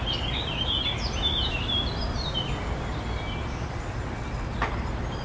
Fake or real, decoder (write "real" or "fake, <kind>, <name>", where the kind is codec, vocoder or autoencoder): real